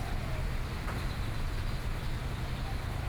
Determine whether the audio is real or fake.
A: real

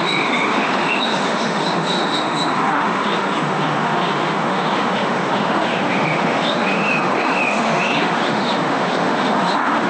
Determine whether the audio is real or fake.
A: fake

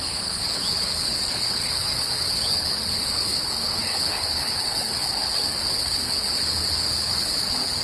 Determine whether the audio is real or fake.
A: fake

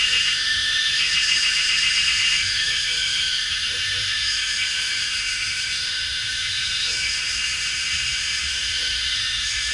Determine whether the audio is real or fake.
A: fake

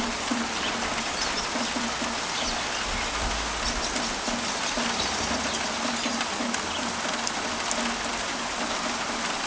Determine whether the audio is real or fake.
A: real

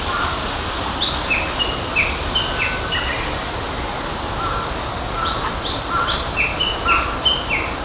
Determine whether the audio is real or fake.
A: real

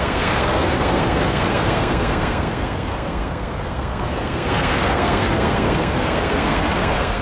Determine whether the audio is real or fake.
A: fake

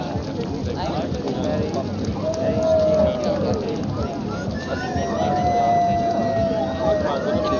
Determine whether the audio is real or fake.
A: real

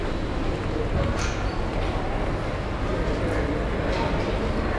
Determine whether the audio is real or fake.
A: real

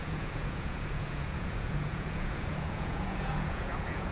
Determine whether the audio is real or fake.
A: fake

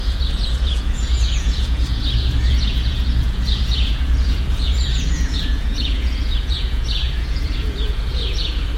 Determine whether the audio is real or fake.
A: fake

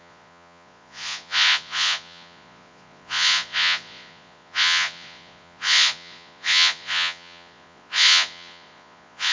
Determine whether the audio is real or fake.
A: fake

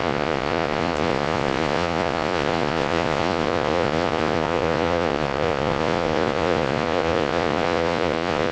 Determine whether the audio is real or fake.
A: fake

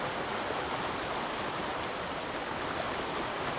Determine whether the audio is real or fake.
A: real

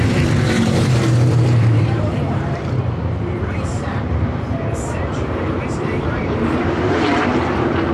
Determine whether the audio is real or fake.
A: fake